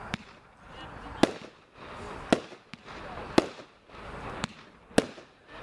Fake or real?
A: real